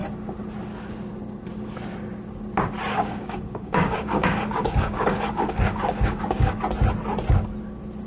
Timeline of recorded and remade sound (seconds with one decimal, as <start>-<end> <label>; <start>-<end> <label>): 0.0-2.9 recorded; 2.9-6.6 remade; 6.6-8.1 recorded